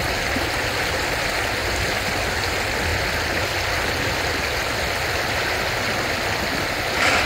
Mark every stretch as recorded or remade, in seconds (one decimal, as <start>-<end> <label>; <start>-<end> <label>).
0.0-7.3 recorded